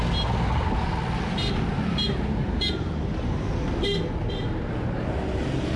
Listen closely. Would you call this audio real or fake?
real